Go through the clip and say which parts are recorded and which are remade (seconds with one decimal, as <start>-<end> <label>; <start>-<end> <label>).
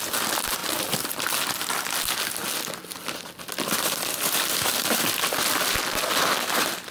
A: 0.0-0.6 remade; 0.6-3.2 recorded; 3.2-6.9 remade